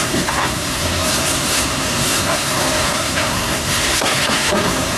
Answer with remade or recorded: remade